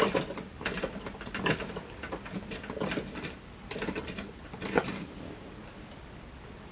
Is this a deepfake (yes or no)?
no